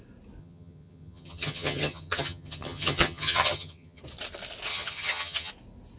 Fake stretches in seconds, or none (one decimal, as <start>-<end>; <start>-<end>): 0.4-4.0; 4.7-5.5